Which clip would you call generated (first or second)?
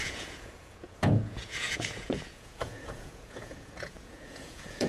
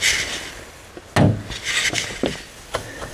first